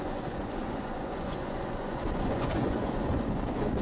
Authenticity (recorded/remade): remade